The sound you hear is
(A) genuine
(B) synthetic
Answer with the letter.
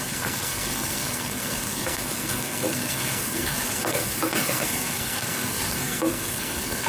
B